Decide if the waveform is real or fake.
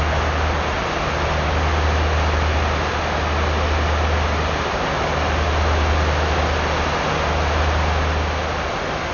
real